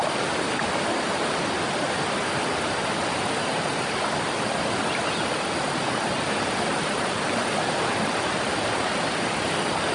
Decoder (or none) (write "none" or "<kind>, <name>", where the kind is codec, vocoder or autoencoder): none